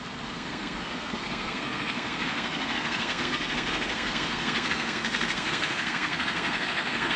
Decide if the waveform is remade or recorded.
remade